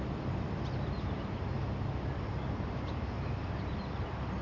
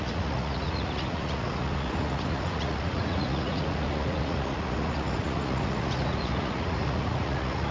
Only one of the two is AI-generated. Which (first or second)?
second